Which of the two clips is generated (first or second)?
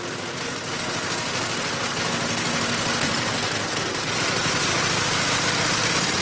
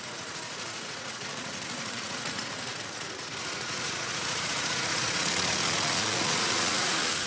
second